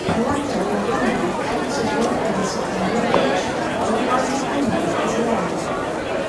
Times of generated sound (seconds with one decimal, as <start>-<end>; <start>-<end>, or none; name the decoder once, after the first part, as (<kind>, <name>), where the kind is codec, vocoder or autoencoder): none